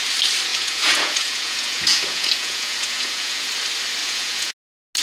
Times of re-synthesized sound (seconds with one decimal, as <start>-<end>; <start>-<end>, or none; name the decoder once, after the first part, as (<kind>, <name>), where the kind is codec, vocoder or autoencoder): 0.5-3.5 (vocoder, Vocos); 4.0-4.5